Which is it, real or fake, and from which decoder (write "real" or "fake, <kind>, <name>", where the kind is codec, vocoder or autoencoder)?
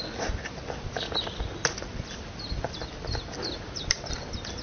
real